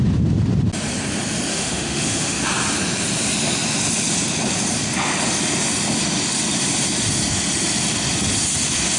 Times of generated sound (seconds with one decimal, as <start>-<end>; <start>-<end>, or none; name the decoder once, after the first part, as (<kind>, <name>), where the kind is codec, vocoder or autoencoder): 1.5-2.4 (autoencoder, DAC-VAE)